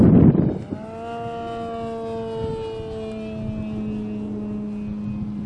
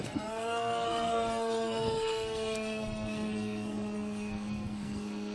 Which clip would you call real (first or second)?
first